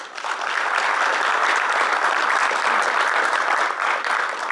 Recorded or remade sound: recorded